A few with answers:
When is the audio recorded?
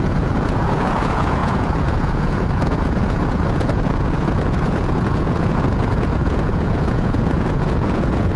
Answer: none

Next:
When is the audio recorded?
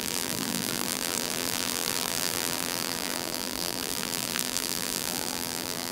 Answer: none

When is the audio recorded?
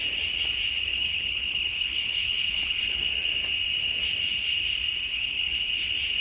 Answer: 0.0-0.9; 3.1-5.1; 5.7-6.2